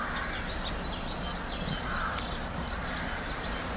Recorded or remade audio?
recorded